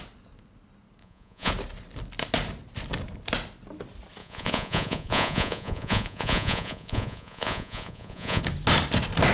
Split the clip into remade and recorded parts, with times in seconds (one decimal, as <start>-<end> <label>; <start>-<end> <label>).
0.0-1.0 recorded; 1.0-1.5 remade; 1.5-4.2 recorded; 4.2-8.4 remade; 8.4-9.3 recorded